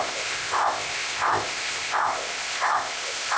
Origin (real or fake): fake